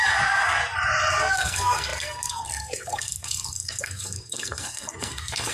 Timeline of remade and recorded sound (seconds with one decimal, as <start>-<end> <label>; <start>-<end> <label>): 0.0-0.6 remade; 0.6-1.2 recorded; 1.2-5.5 remade